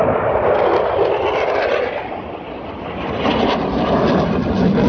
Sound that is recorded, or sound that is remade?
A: remade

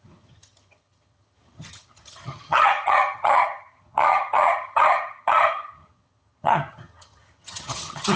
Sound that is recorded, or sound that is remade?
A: remade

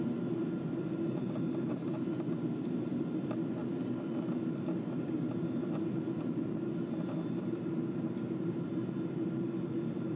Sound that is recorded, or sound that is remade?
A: recorded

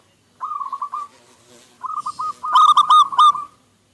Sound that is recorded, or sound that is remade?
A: recorded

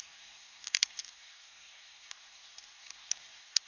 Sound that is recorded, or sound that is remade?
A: remade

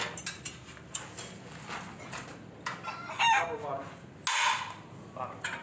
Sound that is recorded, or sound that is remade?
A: recorded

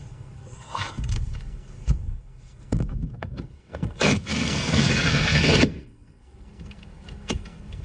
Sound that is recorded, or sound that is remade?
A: remade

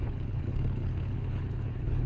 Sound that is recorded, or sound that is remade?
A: remade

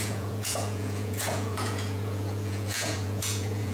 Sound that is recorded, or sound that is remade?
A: remade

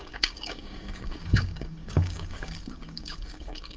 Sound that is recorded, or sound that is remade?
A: remade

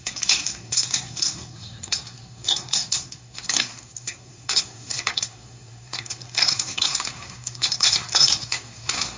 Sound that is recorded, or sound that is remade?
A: remade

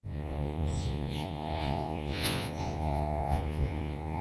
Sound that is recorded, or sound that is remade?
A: remade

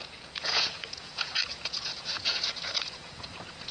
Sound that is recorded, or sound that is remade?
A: remade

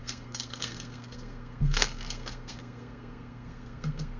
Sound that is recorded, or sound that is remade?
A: remade